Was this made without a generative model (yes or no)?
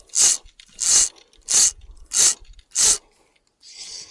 yes